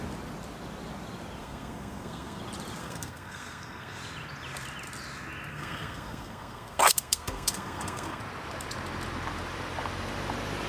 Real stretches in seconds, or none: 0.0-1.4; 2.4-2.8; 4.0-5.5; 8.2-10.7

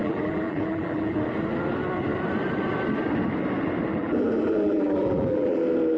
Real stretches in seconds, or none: 1.2-3.9; 5.6-6.0

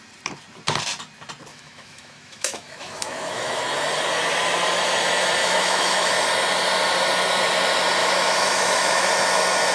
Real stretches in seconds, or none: 0.0-1.5; 3.6-5.4; 6.1-8.0; 9.1-9.7

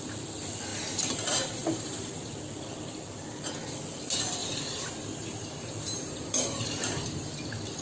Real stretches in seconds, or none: 0.0-0.7; 2.4-4.4; 7.3-7.8